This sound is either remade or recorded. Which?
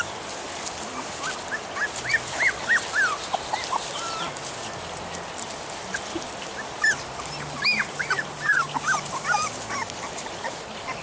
recorded